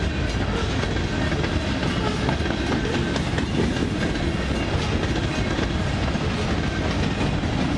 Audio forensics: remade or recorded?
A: recorded